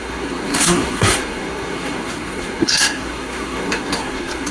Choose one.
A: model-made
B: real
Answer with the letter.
A